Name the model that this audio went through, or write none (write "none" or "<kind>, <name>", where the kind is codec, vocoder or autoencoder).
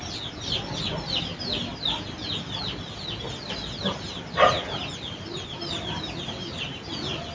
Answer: none